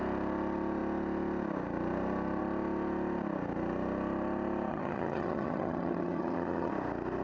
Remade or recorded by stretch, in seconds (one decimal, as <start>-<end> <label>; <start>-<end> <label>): 0.0-4.7 recorded; 4.7-6.7 remade; 6.7-7.2 recorded